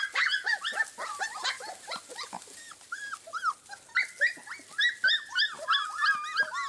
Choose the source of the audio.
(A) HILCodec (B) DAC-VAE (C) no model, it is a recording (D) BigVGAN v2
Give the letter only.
C